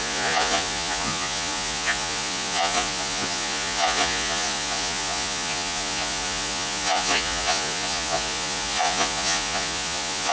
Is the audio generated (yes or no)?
yes